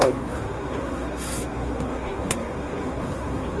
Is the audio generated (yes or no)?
yes